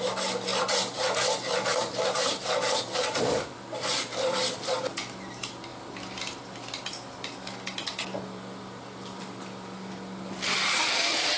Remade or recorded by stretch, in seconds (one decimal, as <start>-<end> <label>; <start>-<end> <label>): 0.0-11.4 recorded